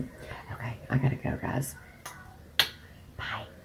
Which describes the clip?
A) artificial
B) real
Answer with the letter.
B